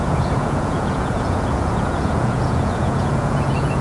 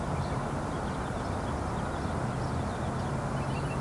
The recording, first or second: second